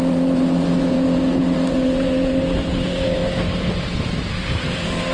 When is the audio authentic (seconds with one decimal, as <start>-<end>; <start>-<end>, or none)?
3.2-4.3